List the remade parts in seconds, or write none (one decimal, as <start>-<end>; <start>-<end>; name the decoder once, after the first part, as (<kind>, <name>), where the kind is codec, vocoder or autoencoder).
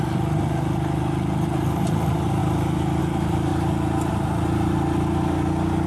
none